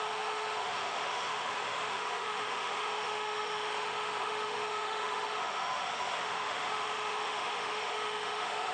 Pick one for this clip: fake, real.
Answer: fake